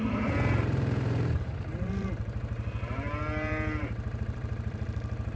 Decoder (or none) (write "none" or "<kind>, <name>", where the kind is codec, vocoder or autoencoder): vocoder, BigVGAN v2